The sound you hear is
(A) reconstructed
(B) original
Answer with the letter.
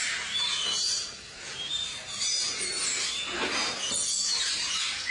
B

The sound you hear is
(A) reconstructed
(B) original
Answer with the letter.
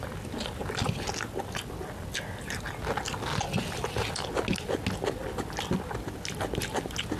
B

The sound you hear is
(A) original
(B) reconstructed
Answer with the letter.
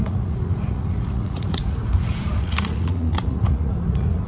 B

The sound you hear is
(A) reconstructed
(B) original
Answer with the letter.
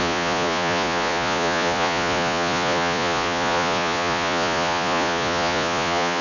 A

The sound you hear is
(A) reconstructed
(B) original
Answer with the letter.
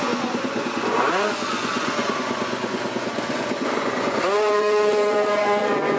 A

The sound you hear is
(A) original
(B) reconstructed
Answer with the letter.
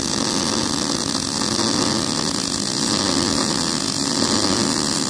A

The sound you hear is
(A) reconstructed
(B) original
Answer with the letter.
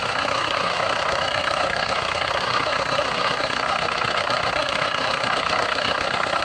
A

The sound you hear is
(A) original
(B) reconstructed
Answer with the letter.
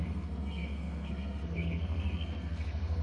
B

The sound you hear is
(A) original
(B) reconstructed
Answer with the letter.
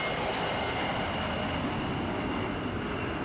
A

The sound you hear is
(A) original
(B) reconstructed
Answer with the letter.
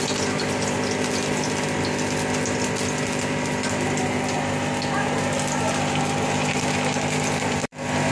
B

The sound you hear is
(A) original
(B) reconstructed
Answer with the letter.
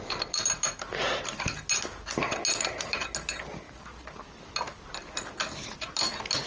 A